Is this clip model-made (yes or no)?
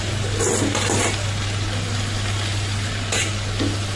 no